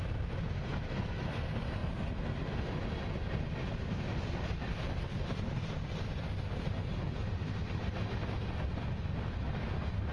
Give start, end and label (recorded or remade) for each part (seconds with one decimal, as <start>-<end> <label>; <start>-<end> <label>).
0.0-10.1 recorded